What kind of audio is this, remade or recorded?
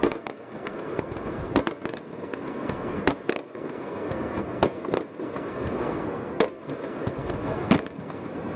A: remade